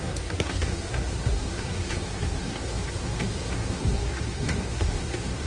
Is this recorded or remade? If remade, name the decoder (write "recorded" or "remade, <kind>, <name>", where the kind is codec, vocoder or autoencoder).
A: remade, codec, SNAC